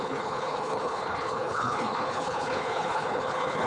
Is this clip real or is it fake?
fake